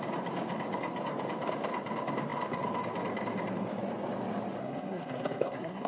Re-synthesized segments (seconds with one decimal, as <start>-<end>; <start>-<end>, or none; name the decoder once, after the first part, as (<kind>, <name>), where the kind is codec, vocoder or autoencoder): 4.6-5.9 (codec, SNAC)